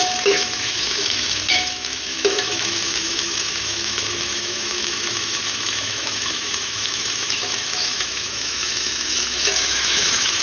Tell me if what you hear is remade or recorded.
remade